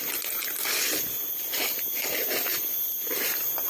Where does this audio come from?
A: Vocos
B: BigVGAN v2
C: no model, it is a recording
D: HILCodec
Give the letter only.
C